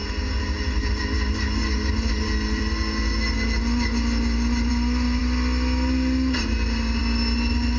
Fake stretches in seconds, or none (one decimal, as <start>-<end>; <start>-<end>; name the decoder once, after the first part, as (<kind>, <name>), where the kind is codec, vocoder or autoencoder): none